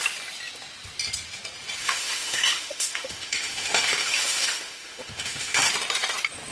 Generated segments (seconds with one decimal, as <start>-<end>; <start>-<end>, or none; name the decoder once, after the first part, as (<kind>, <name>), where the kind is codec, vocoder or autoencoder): 1.8-5.7 (autoencoder, DAC-VAE)